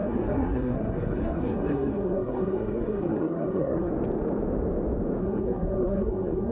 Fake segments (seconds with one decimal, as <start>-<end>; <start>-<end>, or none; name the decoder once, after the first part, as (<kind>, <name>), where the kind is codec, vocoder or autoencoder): 0.0-3.9 (codec, SNAC); 5.2-6.5